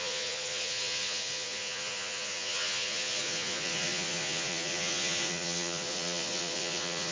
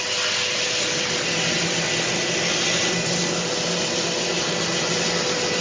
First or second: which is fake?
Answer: first